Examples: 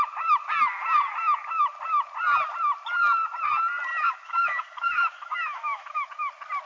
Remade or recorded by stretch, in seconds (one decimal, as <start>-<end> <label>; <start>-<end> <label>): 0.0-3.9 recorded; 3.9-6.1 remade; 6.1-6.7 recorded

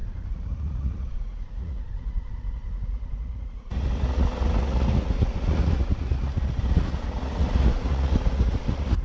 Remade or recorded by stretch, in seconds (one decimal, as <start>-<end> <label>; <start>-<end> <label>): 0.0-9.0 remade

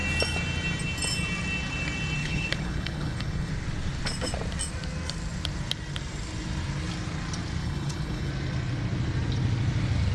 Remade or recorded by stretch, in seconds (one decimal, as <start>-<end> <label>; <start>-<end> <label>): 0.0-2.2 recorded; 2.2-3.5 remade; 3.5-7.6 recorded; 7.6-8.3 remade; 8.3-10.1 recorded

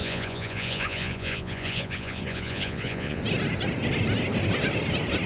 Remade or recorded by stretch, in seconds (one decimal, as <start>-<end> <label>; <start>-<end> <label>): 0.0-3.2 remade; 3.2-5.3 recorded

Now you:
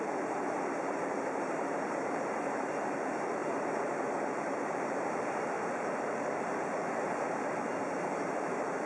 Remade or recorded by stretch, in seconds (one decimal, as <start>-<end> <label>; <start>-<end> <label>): 0.0-8.9 remade

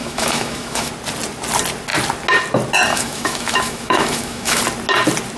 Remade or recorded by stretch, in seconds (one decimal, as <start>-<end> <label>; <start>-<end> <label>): 0.0-0.9 remade; 0.9-2.9 recorded; 2.9-4.6 remade; 4.6-5.4 recorded

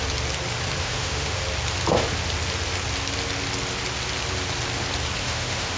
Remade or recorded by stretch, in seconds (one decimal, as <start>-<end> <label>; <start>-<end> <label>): 0.0-0.8 recorded; 0.8-1.4 remade; 1.4-5.2 recorded; 5.2-5.8 remade

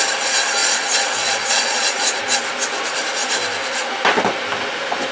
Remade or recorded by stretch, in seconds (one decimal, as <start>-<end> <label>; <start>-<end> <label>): 0.0-0.6 recorded; 0.6-2.2 remade; 2.2-5.1 recorded